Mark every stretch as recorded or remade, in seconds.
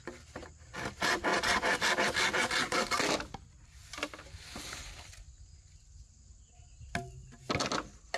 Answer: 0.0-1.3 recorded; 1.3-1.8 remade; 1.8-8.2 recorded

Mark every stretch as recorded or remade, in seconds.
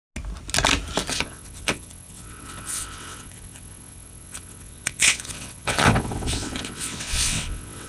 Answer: 0.0-1.1 recorded; 1.1-7.9 remade